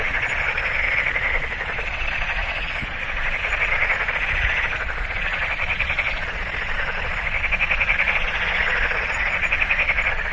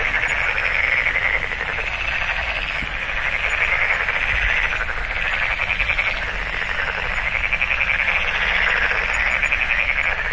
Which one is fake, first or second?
first